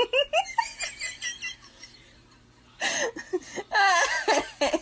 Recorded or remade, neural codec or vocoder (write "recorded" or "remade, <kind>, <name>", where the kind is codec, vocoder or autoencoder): recorded